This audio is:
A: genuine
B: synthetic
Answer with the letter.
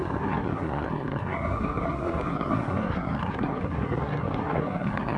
B